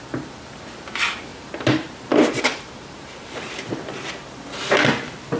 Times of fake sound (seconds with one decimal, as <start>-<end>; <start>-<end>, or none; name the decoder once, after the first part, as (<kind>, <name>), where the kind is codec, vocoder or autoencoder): 1.3-3.7 (vocoder, BigVGAN v2)